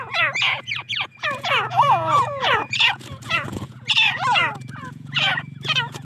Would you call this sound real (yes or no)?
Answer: no